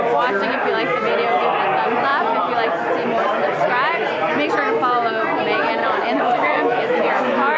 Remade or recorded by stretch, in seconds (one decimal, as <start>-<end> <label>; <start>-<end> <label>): 0.0-5.8 recorded; 5.8-7.6 remade